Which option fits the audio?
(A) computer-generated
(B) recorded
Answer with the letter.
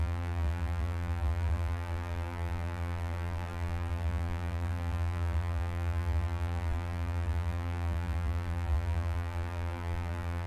A